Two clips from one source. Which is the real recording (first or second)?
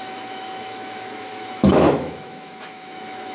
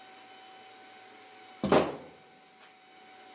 second